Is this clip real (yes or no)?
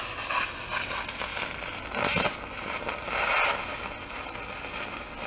yes